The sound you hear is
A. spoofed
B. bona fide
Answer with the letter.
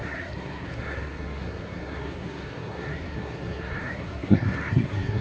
A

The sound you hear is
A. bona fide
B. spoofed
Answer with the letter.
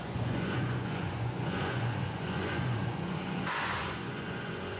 B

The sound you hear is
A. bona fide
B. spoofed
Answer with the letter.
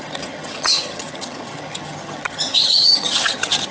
B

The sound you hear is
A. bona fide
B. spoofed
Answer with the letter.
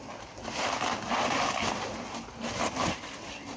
A